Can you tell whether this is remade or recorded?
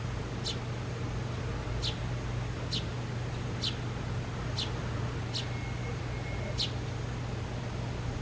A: recorded